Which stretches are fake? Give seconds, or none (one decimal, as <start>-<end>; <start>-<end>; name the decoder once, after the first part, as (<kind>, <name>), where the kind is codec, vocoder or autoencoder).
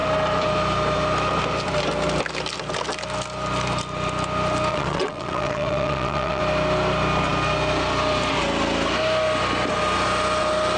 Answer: 4.7-6.4 (vocoder, WaveNeXt)